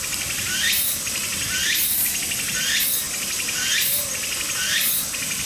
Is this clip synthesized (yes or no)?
no